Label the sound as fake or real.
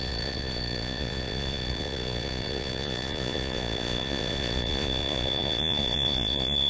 fake